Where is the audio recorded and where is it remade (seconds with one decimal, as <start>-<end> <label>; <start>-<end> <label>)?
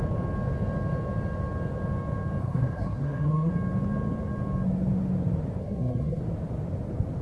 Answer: 0.0-2.4 recorded; 2.4-3.5 remade; 3.5-5.6 recorded; 5.6-6.2 remade; 6.2-7.2 recorded